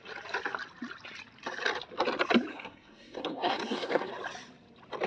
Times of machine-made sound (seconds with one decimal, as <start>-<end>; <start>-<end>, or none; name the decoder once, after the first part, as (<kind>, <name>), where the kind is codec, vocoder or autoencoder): 2.5-4.1 (codec, SNAC)